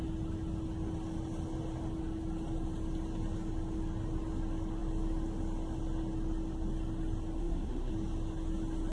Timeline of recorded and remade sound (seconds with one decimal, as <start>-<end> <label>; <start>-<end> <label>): 0.0-7.4 recorded; 7.4-7.9 remade; 7.9-8.9 recorded